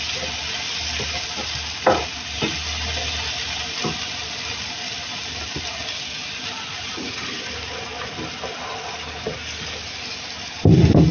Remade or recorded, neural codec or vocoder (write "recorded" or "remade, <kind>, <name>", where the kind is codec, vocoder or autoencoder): recorded